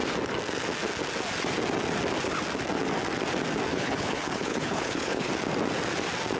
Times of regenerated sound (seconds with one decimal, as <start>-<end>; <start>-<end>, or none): 3.7-5.3